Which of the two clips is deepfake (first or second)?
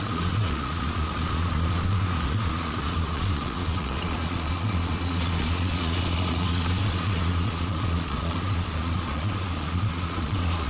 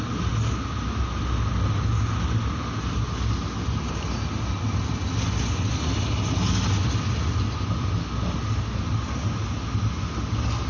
first